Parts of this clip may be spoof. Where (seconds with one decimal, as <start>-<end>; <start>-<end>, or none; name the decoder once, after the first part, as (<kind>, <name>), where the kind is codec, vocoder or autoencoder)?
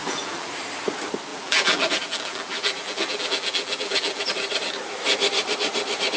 0.0-0.5 (vocoder, BigVGAN v2); 1.3-4.3